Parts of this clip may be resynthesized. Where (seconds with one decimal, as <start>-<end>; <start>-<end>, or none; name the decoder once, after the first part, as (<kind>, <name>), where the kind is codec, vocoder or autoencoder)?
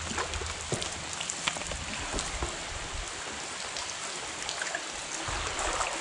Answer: none